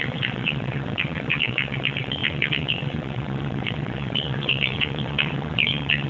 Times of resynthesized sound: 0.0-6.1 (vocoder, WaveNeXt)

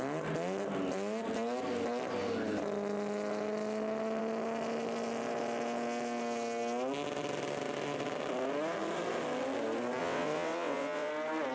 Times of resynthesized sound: 10.0-11.1 (vocoder, WaveNeXt)

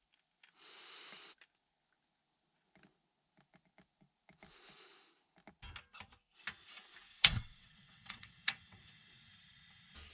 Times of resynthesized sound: 7.1-9.3 (vocoder, WaveNeXt)

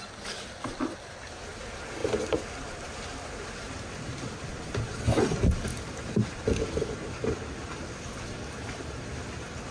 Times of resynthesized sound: none

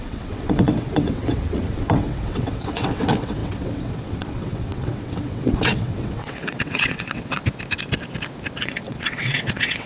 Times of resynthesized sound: 0.0-7.4 (vocoder, WaveNeXt); 8.6-9.9